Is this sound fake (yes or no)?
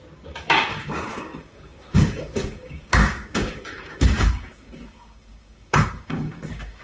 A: yes